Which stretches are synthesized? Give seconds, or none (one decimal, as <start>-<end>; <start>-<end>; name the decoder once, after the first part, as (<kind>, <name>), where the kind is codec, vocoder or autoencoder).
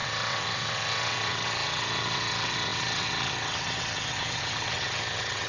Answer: 0.0-5.5 (vocoder, WaveNeXt)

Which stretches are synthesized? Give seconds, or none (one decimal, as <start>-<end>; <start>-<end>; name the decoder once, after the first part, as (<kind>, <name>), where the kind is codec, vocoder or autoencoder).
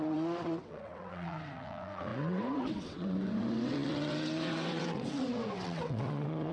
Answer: 0.0-6.5 (vocoder, WaveNeXt)